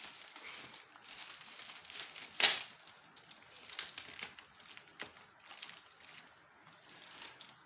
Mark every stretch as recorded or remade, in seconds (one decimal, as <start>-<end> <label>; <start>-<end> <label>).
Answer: 0.0-7.7 recorded